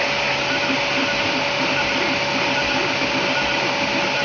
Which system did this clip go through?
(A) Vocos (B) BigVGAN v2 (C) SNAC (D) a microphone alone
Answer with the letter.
D